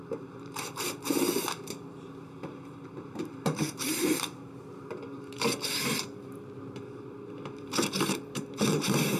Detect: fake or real fake